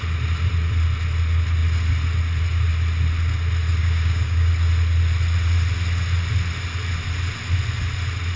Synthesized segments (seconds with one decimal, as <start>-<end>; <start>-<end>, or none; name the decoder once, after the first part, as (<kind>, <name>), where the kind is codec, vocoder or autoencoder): 3.8-4.5 (codec, DAC)